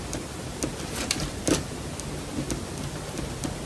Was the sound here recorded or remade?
recorded